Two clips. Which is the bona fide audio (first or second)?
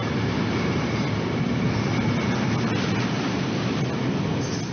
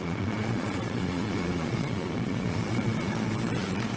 first